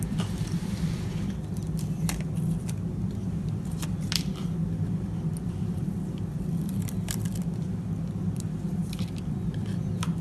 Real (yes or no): no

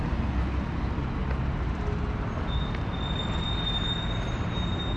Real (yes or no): yes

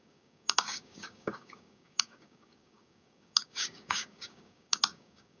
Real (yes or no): no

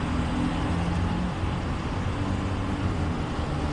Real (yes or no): yes